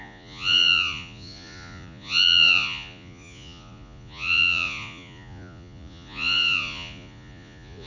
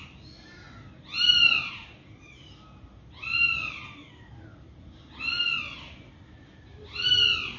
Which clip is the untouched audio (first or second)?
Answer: second